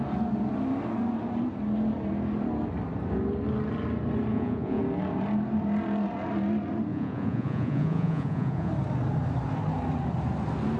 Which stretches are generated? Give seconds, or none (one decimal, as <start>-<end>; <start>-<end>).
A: 4.3-4.8; 6.9-8.7